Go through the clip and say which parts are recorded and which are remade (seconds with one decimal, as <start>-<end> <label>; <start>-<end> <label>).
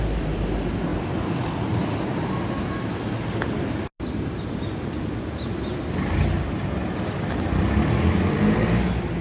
0.0-9.2 recorded